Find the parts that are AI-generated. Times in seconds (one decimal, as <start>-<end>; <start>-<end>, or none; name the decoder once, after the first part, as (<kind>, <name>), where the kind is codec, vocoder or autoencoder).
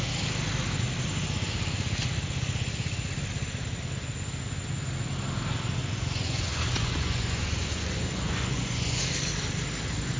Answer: 5.8-9.0 (vocoder, Vocos)